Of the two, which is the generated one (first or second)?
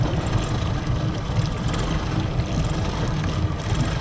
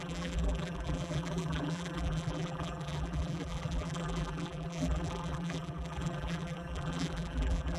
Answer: second